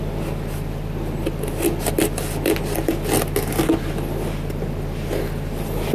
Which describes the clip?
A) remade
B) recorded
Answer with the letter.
B